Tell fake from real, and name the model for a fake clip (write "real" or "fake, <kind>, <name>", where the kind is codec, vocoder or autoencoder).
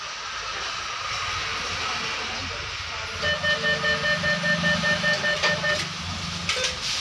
real